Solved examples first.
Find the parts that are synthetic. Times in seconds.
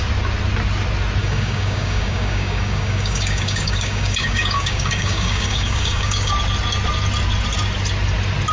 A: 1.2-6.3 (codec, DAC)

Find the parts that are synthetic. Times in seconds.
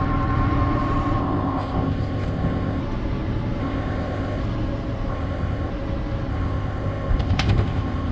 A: 1.2-2.8 (codec, ZipCodec); 3.6-4.4; 5.1-5.7; 6.3-8.1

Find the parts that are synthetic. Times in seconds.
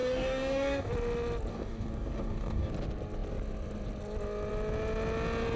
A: 0.0-0.9 (codec, DAC); 1.5-2.7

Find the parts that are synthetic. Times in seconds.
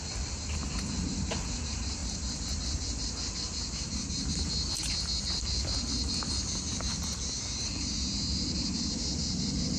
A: none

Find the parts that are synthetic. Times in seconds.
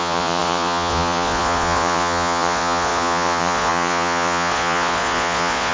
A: 0.0-5.7 (vocoder, Vocos)